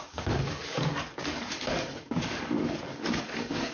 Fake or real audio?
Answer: fake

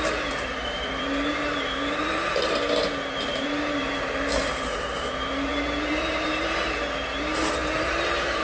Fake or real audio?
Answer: fake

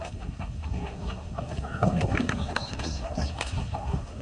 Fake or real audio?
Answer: fake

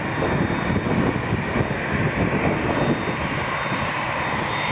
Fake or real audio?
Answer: real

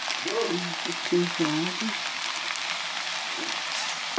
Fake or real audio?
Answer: real